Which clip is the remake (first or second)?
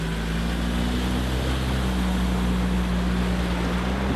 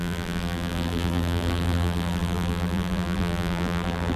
second